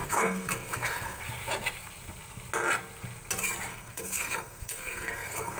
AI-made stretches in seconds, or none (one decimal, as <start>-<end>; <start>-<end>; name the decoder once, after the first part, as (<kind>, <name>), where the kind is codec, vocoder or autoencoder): 0.0-1.2 (codec, SNAC); 3.7-5.6